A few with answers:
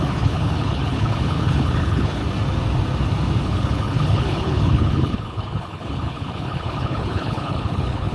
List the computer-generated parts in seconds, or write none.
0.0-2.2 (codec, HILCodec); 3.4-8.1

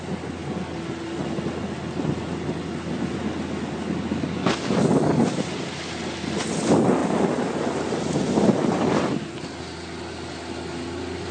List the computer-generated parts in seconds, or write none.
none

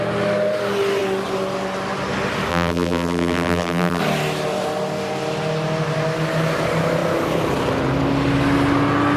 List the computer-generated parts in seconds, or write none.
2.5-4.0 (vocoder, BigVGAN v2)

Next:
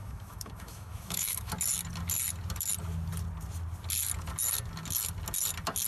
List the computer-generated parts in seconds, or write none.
0.0-1.5 (autoencoder, DAC-VAE)

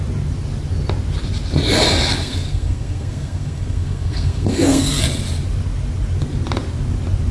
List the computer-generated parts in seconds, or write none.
2.2-5.0 (codec, SNAC)